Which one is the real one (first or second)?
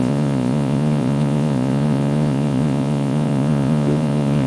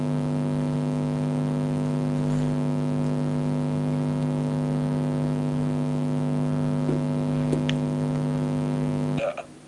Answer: second